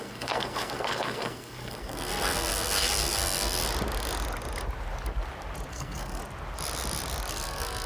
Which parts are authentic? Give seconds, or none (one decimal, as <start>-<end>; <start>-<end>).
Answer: 3.6-5.7; 6.2-7.3